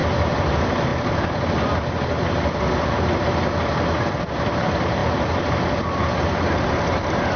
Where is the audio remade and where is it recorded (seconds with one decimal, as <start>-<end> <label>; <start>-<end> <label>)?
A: 0.0-0.5 recorded; 0.5-0.9 remade; 0.9-2.9 recorded; 2.9-5.0 remade; 5.0-5.8 recorded; 5.8-7.4 remade